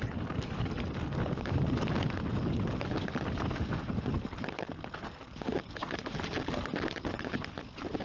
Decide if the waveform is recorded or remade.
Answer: recorded